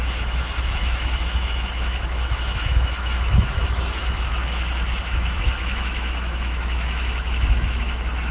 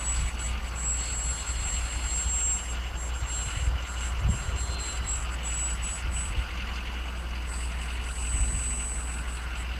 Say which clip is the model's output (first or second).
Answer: first